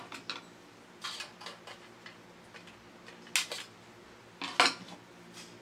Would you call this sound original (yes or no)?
yes